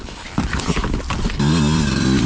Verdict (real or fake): fake